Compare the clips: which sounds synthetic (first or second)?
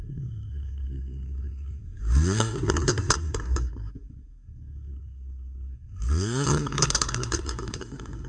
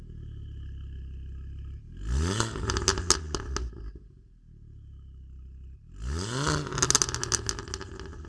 first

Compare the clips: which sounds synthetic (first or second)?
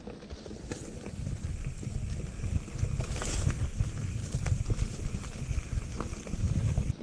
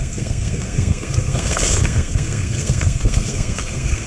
second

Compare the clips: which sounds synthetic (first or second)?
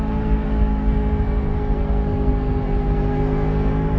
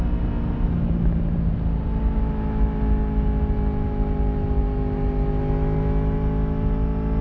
first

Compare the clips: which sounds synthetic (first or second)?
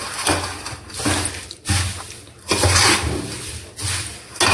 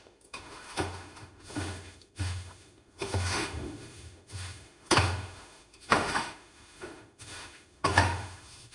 second